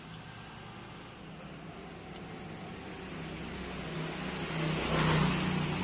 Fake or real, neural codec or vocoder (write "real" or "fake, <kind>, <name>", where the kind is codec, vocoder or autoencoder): real